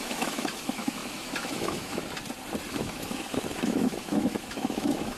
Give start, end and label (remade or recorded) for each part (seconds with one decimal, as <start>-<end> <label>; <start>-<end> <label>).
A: 0.0-2.0 remade; 2.0-2.7 recorded; 2.7-5.2 remade